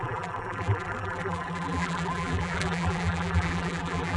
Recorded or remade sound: remade